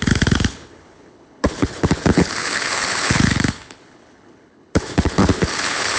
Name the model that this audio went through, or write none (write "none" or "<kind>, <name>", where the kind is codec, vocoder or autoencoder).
codec, HILCodec